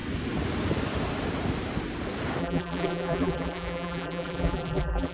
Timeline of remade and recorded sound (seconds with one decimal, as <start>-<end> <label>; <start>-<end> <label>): 0.0-2.4 recorded; 2.4-5.1 remade